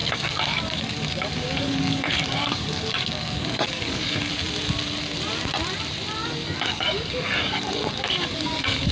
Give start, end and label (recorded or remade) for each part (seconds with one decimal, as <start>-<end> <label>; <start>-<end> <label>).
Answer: 0.0-4.3 remade; 4.3-6.2 recorded; 6.2-8.9 remade